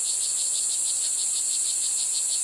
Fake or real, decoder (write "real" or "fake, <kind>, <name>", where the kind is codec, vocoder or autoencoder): real